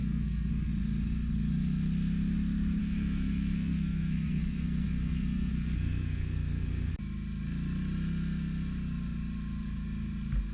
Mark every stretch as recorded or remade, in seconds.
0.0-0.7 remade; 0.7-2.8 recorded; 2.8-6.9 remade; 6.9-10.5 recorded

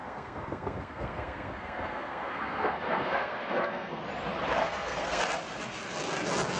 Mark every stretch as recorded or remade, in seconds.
0.0-4.0 remade; 4.0-4.6 recorded; 4.6-5.2 remade; 5.2-6.6 recorded